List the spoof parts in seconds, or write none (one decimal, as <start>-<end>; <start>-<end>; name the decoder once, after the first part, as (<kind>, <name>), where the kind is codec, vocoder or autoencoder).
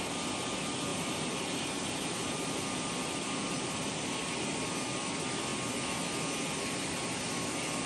0.9-2.5 (vocoder, BigVGAN v2)